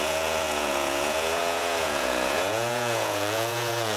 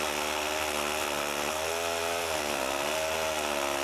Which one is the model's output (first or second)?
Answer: first